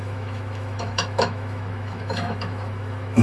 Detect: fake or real fake